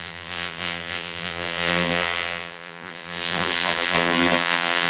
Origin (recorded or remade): remade